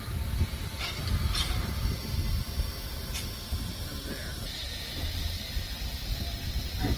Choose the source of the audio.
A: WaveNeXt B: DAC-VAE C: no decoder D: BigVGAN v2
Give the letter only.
C